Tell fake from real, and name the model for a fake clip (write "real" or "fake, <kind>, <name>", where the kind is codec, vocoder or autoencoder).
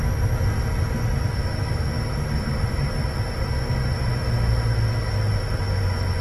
real